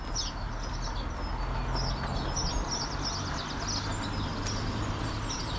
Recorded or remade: recorded